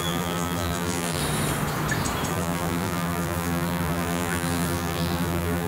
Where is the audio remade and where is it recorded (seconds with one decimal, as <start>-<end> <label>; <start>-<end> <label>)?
0.0-1.2 remade; 1.2-2.3 recorded; 2.3-5.7 remade